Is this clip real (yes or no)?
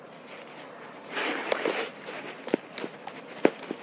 yes